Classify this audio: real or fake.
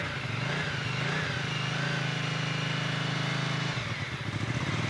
real